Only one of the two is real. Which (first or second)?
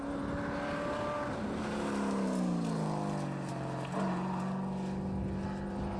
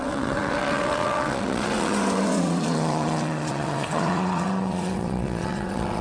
first